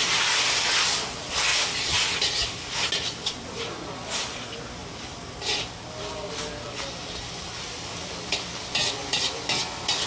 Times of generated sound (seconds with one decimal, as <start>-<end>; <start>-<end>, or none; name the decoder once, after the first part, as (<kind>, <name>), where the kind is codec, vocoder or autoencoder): none